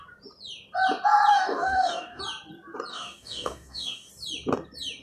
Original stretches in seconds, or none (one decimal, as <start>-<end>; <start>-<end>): 0.0-1.3; 2.2-2.9; 4.1-5.0